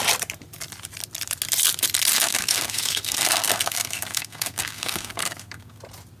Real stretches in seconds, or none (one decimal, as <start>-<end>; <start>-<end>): 0.0-2.1; 5.8-6.2